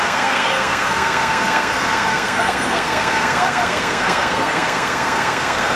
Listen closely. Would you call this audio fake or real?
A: fake